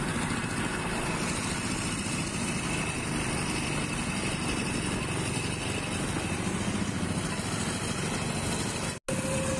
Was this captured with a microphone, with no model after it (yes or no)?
yes